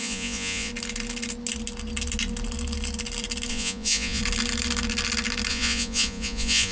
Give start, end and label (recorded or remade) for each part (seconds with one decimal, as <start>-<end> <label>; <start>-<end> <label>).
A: 0.0-0.7 remade; 0.7-3.5 recorded; 3.5-4.2 remade; 4.2-5.5 recorded; 5.5-6.7 remade